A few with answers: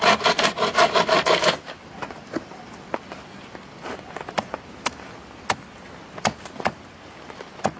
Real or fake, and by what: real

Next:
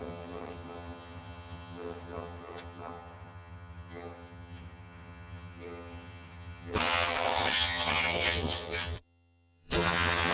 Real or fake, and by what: fake, vocoder, HiFi-GAN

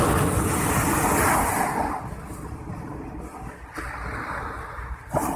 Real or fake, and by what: real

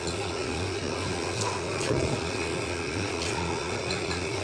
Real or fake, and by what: fake, vocoder, Vocos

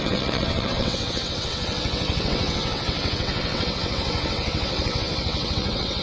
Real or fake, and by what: fake, vocoder, WaveNeXt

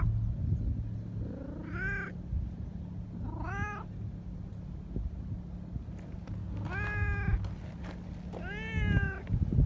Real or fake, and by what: real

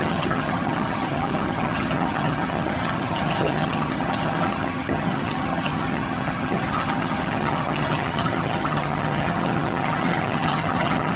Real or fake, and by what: fake, vocoder, HiFi-GAN